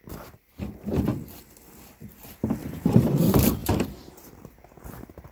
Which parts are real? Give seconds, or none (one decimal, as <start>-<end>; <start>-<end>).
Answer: 1.1-2.0